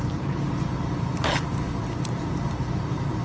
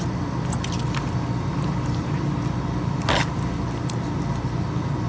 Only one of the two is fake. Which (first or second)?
first